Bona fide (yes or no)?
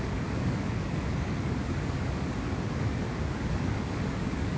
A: no